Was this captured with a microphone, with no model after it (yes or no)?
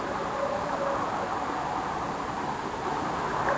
yes